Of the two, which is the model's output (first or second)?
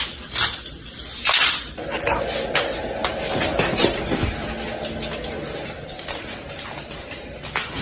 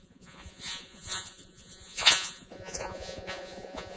second